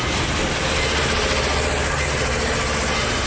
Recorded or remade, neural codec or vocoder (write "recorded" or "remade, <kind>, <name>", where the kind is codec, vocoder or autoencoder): recorded